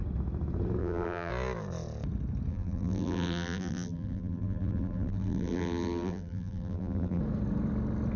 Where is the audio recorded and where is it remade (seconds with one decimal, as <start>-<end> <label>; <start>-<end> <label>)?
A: 0.0-0.8 recorded; 0.8-1.3 remade; 1.3-2.5 recorded; 2.5-7.2 remade; 7.2-8.2 recorded

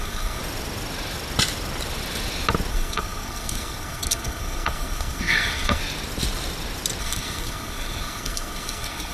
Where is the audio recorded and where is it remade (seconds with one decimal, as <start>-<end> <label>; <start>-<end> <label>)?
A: 0.0-0.4 remade; 0.4-2.7 recorded; 2.7-5.8 remade; 5.8-7.0 recorded; 7.0-9.1 remade

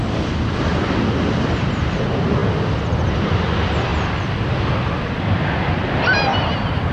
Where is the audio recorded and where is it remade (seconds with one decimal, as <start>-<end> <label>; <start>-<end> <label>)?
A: 0.0-0.7 remade; 0.7-1.7 recorded; 1.7-2.4 remade; 2.4-3.2 recorded; 3.2-3.9 remade; 3.9-4.6 recorded; 4.6-6.1 remade; 6.1-6.9 recorded